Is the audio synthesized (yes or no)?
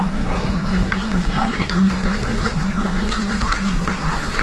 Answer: yes